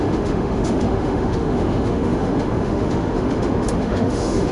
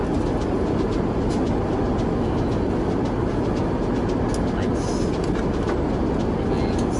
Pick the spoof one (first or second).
first